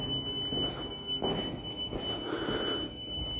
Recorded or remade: recorded